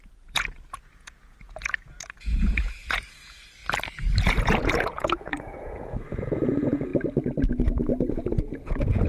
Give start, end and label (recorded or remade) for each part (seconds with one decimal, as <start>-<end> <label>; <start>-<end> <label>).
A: 0.0-3.6 remade; 3.6-4.2 recorded; 4.2-6.9 remade; 6.9-8.1 recorded; 8.1-9.1 remade